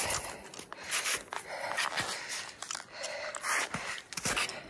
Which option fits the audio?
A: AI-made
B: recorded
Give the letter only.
B